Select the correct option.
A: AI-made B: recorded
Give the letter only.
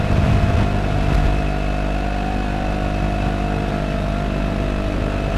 B